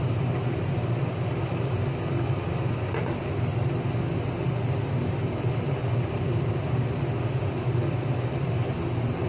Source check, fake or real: real